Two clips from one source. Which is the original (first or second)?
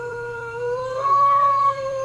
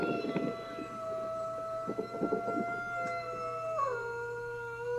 second